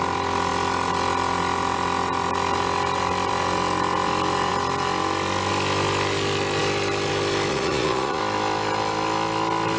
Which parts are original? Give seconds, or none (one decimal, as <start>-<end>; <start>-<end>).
0.0-7.5; 8.2-9.8

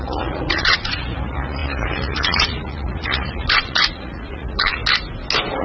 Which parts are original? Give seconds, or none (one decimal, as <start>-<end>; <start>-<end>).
4.8-5.6

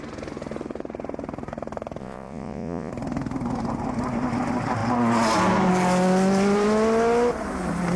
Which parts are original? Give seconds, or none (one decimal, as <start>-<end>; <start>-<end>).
0.0-2.0; 2.9-8.0